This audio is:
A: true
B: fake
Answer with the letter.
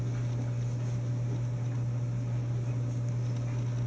A